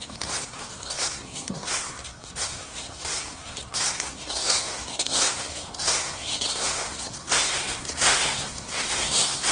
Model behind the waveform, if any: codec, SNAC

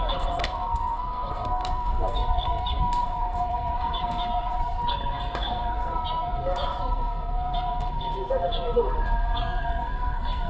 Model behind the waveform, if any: codec, SNAC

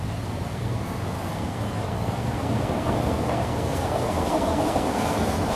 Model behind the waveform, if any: codec, SNAC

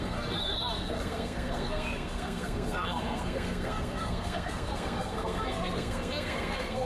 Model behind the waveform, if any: codec, SNAC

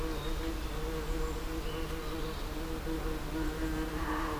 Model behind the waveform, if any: none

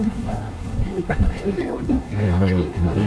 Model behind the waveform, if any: codec, SNAC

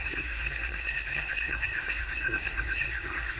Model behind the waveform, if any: codec, SNAC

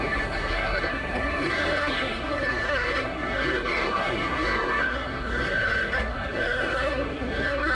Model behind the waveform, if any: codec, SNAC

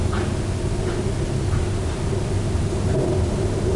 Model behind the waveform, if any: none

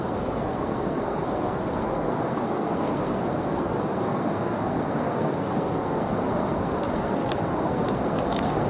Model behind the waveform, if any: codec, SNAC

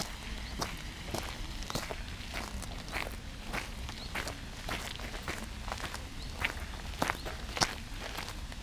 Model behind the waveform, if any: none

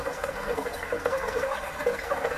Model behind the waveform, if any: codec, SNAC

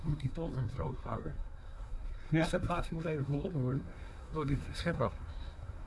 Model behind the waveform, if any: codec, SNAC